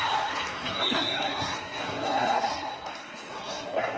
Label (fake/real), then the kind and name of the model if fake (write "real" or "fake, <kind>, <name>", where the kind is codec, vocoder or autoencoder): fake, codec, SNAC